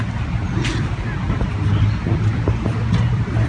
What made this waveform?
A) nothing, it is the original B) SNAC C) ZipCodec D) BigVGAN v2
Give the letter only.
A